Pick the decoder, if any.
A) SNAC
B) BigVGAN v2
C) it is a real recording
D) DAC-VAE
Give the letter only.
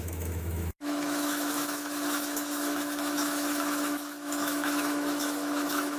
D